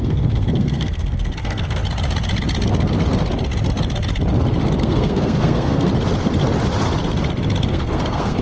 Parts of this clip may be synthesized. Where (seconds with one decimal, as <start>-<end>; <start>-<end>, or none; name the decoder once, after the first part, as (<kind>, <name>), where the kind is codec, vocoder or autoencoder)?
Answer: 0.0-1.8 (codec, SNAC); 4.8-5.9; 7.7-8.4